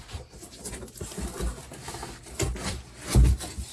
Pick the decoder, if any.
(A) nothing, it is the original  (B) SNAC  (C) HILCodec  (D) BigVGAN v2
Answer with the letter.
A